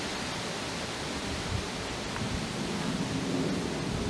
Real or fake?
real